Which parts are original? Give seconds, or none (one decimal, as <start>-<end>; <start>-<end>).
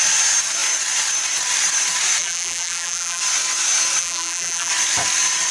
0.0-2.2; 3.2-4.0; 4.7-5.5